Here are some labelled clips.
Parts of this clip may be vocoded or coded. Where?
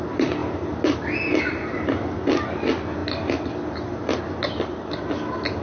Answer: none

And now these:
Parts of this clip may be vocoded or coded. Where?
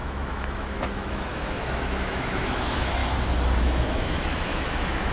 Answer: 0.0-3.0; 3.6-5.1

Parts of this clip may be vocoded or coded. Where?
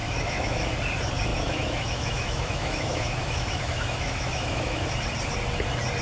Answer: 0.0-0.7; 1.3-4.9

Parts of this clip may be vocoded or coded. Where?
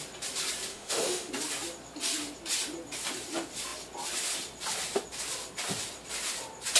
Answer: 0.7-1.3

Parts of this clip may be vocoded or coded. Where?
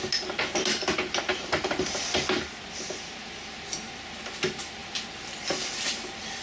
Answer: none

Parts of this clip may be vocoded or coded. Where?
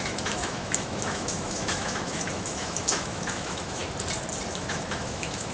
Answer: 0.0-3.8; 4.5-5.5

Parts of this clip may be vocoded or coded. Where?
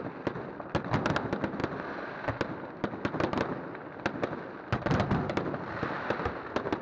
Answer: none